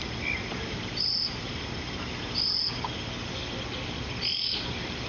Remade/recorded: recorded